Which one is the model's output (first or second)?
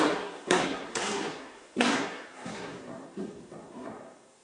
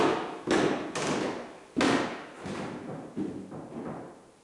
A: first